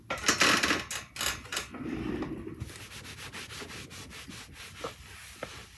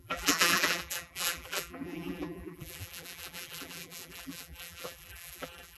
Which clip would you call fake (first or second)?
second